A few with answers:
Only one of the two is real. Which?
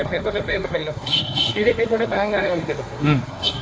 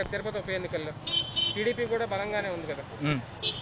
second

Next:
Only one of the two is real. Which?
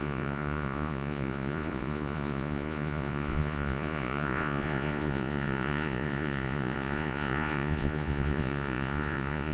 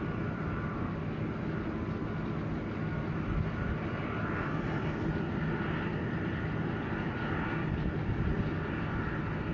second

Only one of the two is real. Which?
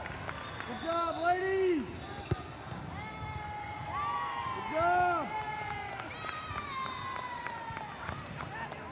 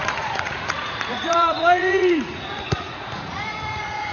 first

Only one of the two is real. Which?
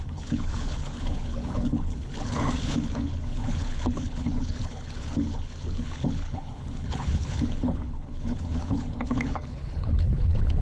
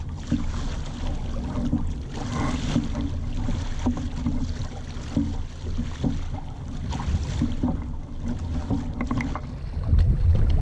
second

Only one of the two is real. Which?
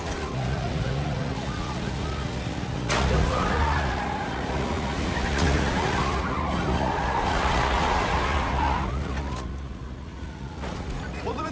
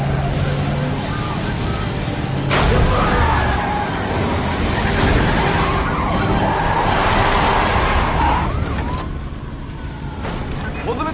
second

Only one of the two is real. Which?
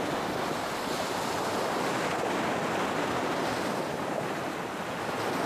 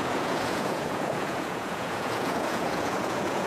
first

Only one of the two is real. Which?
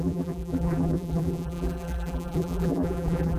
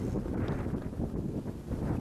second